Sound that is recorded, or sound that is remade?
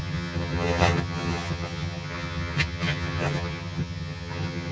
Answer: remade